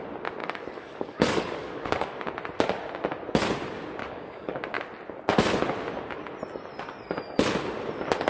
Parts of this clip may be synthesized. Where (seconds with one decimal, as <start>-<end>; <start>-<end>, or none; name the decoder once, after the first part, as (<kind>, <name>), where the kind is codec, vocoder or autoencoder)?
0.4-2.3 (codec, DAC); 4.0-4.6